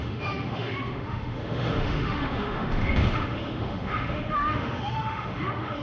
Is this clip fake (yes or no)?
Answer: yes